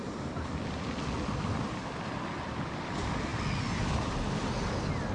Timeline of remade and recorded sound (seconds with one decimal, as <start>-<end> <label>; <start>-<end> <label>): 0.0-5.1 recorded